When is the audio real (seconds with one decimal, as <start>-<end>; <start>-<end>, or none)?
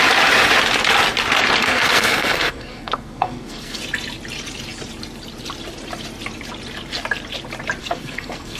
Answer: 0.0-1.6; 3.8-7.8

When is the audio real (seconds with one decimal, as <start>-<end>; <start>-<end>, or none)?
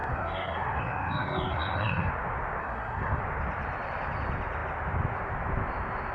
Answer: 2.1-2.6; 3.2-6.1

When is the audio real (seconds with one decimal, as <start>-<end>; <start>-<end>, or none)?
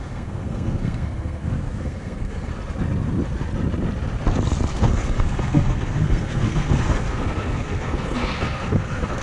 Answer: 2.5-4.7